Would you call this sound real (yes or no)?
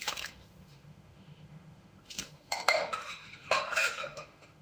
no